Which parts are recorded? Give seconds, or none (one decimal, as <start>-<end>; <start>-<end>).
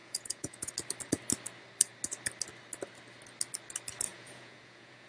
0.7-4.1